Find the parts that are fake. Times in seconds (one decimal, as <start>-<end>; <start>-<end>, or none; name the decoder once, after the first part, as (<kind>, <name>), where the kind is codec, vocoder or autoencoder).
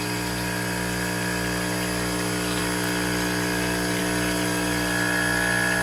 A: none